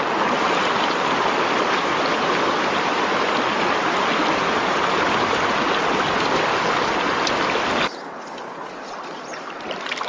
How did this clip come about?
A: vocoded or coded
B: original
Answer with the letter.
B